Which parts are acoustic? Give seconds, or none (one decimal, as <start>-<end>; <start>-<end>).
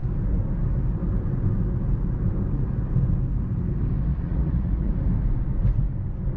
0.0-4.1; 4.9-6.4